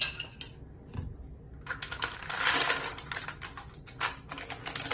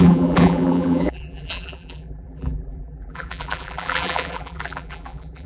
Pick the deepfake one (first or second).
second